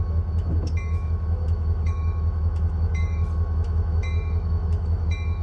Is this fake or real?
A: fake